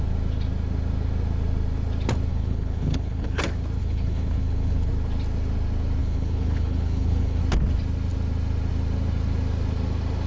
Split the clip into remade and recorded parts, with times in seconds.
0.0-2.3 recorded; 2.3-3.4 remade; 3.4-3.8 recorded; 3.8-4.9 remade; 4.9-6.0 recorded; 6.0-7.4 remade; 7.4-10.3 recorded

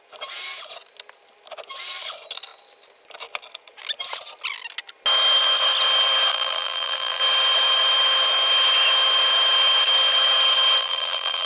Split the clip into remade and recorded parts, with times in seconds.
0.0-6.3 recorded; 6.3-7.2 remade; 7.2-10.8 recorded; 10.8-11.5 remade

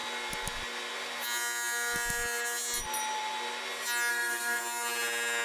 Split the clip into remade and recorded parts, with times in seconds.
0.0-4.1 recorded; 4.1-4.6 remade; 4.6-5.4 recorded

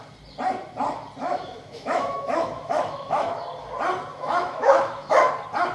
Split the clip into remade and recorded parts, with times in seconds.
0.0-1.2 recorded; 1.2-3.4 remade; 3.4-4.1 recorded; 4.1-5.3 remade; 5.3-5.7 recorded

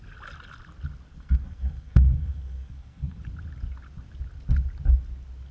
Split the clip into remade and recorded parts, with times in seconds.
0.0-1.1 recorded; 1.1-3.2 remade; 3.2-5.5 recorded

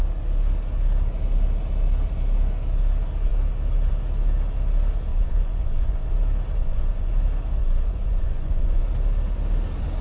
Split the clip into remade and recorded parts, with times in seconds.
0.0-5.1 recorded; 5.1-6.1 remade; 6.1-6.6 recorded; 6.6-7.1 remade; 7.1-7.6 recorded; 7.6-8.8 remade; 8.8-10.0 recorded

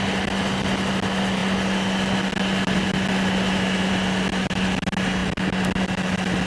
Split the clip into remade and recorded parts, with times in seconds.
0.0-6.5 recorded

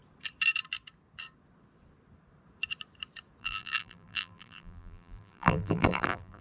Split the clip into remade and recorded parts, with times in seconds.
0.0-3.4 recorded; 3.4-6.4 remade